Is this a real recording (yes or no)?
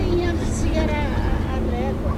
yes